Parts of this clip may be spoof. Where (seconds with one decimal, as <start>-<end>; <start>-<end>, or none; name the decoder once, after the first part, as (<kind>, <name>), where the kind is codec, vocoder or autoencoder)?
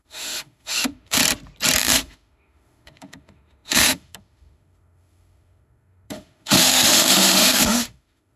0.0-1.2 (autoencoder, DAC-VAE); 1.8-8.4